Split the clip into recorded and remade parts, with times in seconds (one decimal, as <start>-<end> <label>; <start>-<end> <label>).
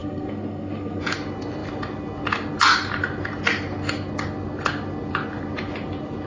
0.0-1.0 remade; 1.0-6.3 recorded